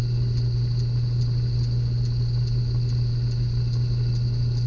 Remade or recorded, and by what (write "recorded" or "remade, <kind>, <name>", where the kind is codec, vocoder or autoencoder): recorded